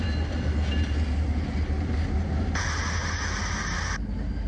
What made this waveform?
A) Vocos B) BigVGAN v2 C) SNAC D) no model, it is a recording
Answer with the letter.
D